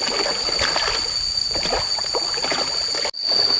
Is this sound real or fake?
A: real